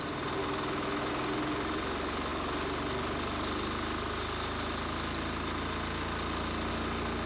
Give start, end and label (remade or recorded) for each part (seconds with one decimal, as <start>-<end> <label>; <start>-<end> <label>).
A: 0.0-0.4 recorded; 0.4-1.1 remade; 1.1-7.3 recorded